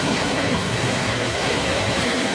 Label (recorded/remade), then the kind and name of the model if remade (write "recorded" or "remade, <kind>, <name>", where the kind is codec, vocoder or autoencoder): remade, codec, SNAC